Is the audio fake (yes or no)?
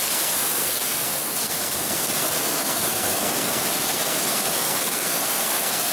yes